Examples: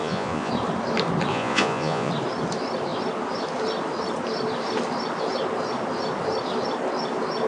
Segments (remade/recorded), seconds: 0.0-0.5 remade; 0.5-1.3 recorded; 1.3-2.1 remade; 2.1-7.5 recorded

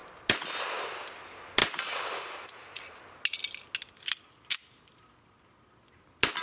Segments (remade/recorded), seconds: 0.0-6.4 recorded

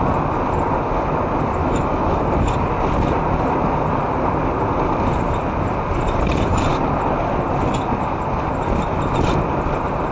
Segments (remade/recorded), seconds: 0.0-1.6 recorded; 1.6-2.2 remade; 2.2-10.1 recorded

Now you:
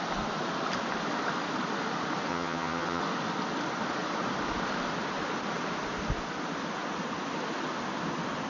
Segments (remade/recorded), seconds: 0.0-2.3 recorded; 2.3-3.0 remade; 3.0-8.5 recorded

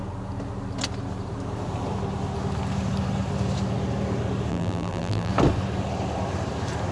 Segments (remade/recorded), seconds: 0.0-4.5 recorded; 4.5-5.3 remade; 5.3-6.9 recorded

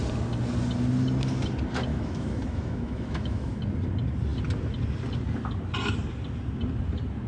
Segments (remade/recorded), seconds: 0.0-1.9 recorded; 1.9-3.6 remade; 3.6-7.3 recorded